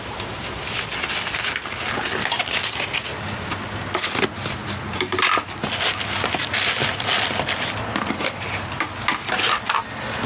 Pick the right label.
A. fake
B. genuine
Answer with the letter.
B